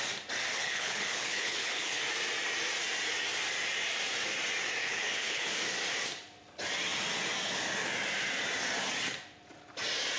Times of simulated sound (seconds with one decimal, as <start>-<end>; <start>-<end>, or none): 0.5-2.0; 4.8-5.5